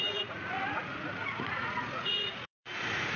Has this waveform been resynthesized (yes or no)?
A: yes